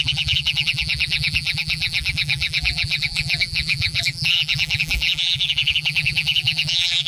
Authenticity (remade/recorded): remade